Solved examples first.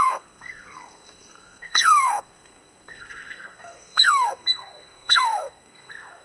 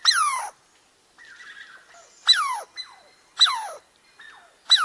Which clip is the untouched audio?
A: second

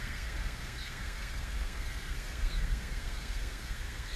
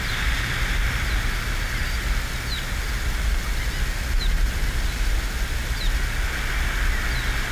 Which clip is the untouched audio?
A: second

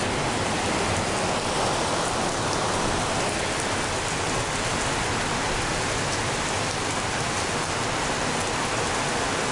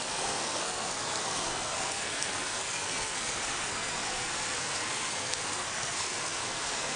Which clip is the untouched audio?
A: first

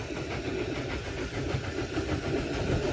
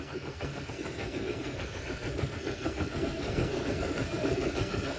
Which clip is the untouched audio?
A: first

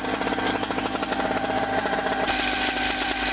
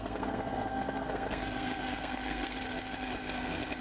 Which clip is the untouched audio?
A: first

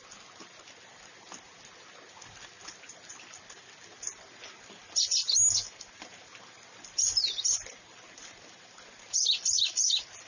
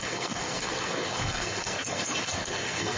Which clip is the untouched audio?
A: first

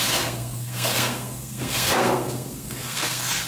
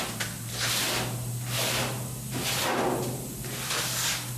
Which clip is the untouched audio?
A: second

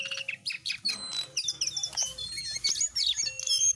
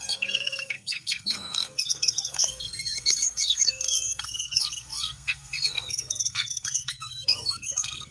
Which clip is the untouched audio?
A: first